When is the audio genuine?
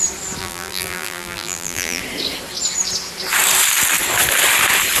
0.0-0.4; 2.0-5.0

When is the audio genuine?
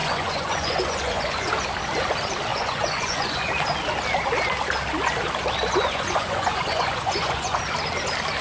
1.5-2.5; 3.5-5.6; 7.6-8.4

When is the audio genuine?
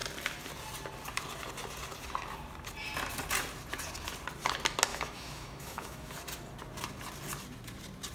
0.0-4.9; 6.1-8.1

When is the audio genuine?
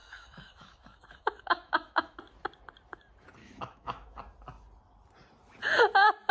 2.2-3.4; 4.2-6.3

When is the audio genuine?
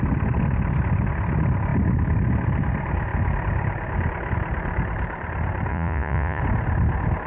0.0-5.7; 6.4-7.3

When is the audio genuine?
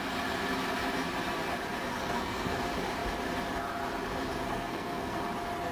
0.0-1.9; 2.6-4.3; 5.3-5.7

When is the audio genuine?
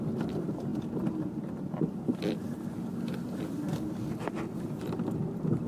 0.0-5.7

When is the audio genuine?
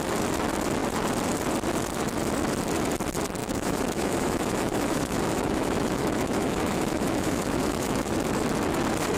0.0-3.4; 8.1-9.2